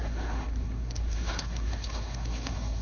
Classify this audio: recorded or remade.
remade